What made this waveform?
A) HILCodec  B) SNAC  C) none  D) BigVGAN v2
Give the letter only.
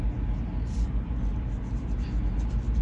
C